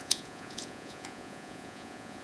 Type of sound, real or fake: fake